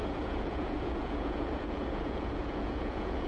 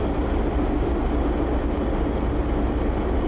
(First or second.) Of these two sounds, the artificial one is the first